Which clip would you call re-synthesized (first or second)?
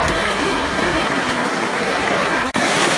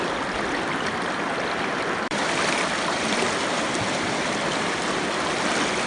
first